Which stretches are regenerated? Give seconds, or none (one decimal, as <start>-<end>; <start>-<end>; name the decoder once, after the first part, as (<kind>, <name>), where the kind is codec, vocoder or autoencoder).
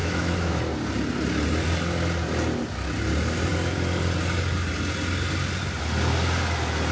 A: 0.0-0.6 (autoencoder, DAC-VAE)